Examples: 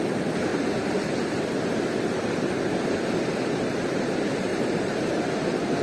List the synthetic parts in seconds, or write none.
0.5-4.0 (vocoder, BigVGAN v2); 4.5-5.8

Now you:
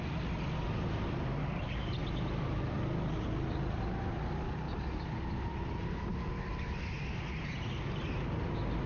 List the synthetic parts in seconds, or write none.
none

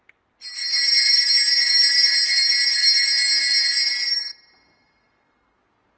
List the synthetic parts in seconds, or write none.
none

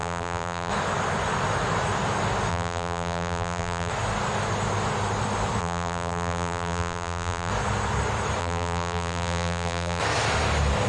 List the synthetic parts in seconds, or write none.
0.0-0.7 (vocoder, BigVGAN v2); 2.5-3.9; 5.6-7.5; 8.4-10.0